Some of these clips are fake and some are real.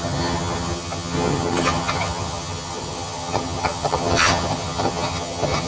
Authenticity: fake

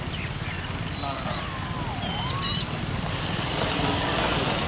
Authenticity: real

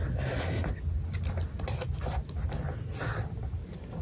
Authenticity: real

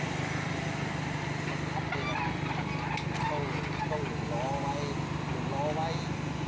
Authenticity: real